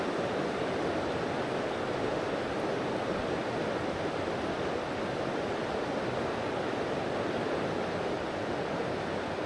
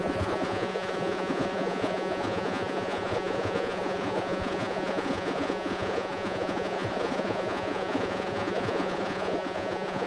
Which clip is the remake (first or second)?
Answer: second